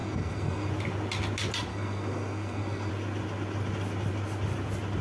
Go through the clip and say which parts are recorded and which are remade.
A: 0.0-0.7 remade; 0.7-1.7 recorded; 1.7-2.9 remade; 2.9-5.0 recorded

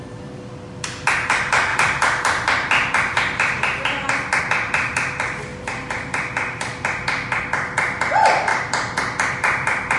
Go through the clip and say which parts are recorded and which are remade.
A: 0.0-10.0 recorded